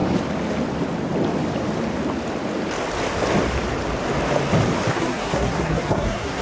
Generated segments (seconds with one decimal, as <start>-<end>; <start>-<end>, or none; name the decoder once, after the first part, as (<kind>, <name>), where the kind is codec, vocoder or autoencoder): 4.9-6.4 (codec, SNAC)